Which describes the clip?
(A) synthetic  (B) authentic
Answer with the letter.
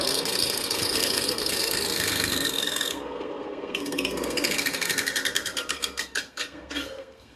A